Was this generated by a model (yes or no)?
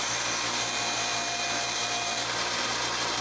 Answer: yes